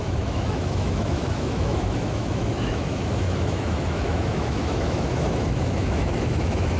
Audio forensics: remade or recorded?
remade